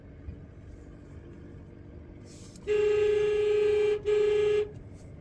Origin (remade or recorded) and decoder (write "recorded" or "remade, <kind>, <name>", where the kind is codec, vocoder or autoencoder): recorded